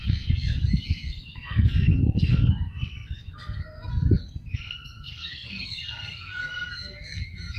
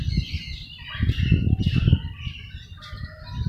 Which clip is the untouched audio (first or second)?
second